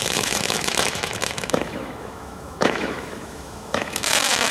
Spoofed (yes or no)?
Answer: yes